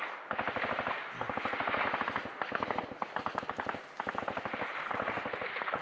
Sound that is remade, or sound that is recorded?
recorded